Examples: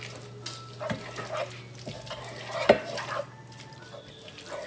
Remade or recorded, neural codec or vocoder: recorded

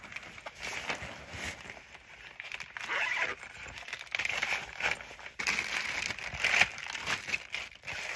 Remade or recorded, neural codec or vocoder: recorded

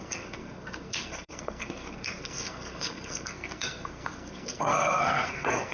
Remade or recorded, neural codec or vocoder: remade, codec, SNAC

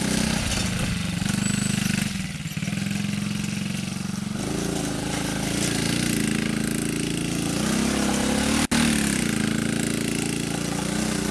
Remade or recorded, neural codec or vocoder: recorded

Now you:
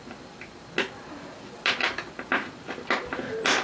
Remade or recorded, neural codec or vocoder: recorded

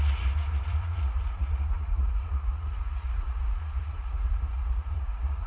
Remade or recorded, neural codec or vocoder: remade, vocoder, Vocos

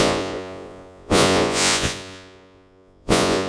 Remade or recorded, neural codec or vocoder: remade, vocoder, Vocos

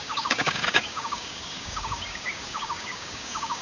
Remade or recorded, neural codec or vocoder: remade, codec, DAC